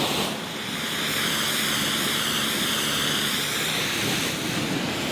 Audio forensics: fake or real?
fake